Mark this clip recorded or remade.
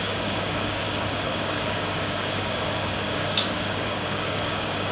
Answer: remade